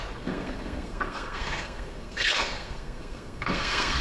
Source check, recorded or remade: remade